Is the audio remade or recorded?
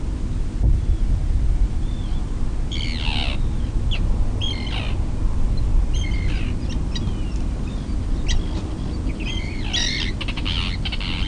recorded